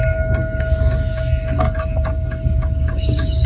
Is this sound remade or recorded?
remade